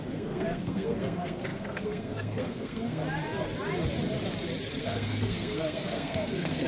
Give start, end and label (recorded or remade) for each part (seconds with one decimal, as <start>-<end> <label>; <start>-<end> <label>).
0.0-3.0 remade; 3.0-4.8 recorded; 4.8-6.7 remade